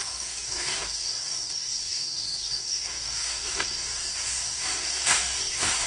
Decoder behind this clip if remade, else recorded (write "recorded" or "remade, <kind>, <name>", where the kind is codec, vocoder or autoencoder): remade, codec, DAC